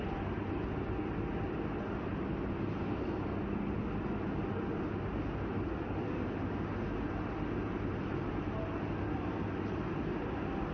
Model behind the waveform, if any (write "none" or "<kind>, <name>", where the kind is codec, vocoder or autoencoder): none